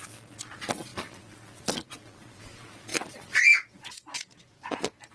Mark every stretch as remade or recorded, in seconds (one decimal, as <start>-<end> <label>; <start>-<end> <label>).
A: 0.0-5.1 remade